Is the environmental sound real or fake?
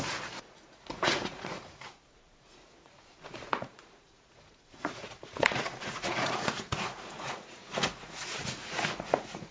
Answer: fake